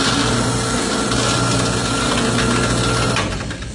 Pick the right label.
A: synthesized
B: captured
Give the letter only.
B